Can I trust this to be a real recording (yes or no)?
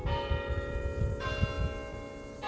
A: yes